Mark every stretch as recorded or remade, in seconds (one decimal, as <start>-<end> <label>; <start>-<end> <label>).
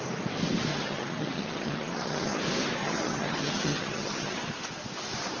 0.0-0.7 recorded; 0.7-2.4 remade; 2.4-2.8 recorded; 2.8-4.4 remade; 4.4-5.4 recorded